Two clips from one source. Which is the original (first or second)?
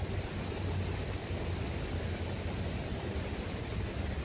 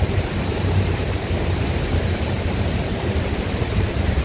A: first